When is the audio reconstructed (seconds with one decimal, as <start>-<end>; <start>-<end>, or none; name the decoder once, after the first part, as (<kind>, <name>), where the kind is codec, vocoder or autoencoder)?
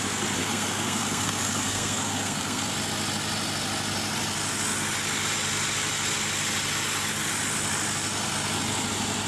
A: 0.4-2.6 (codec, SNAC)